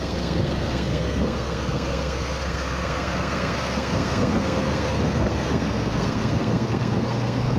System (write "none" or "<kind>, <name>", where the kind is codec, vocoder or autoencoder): codec, SNAC